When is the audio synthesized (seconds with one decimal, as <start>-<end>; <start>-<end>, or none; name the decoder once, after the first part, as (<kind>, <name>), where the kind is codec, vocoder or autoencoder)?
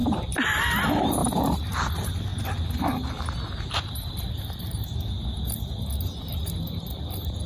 none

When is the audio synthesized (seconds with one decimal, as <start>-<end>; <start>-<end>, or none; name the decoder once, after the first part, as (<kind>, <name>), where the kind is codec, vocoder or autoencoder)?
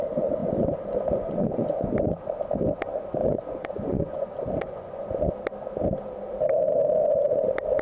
0.4-1.8 (vocoder, Vocos); 3.2-5.3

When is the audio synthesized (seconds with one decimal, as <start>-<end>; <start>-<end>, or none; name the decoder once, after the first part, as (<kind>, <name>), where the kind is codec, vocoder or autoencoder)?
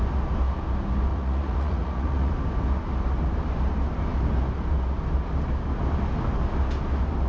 1.1-2.3 (vocoder, Vocos)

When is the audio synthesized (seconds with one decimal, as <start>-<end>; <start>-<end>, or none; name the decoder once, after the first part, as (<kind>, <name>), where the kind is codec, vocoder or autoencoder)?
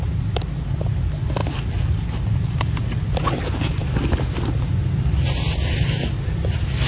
none